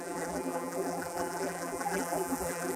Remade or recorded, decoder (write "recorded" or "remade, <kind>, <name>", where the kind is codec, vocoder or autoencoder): remade, vocoder, BigVGAN v2